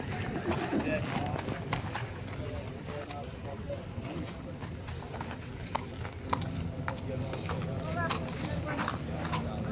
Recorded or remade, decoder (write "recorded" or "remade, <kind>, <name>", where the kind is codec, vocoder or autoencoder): recorded